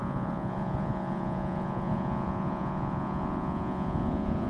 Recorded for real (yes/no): no